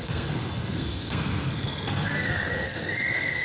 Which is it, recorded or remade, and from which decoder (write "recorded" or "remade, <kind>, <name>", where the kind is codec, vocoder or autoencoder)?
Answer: remade, codec, SNAC